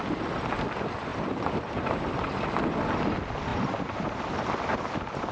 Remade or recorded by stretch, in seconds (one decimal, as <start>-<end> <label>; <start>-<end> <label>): 0.0-1.1 recorded; 1.1-2.4 remade; 2.4-3.5 recorded; 3.5-4.5 remade; 4.5-5.3 recorded